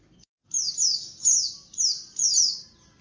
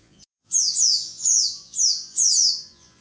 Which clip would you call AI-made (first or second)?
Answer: second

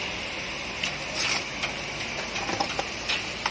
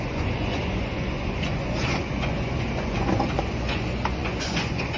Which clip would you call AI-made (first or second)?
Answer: second